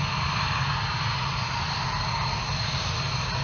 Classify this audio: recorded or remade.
recorded